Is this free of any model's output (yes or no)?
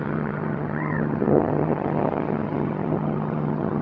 no